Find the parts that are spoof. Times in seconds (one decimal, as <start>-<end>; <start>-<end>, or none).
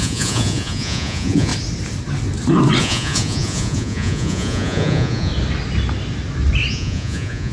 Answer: 0.0-1.5; 2.8-5.3; 6.7-7.5